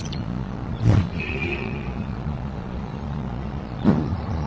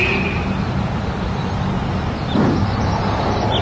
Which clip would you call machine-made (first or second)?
first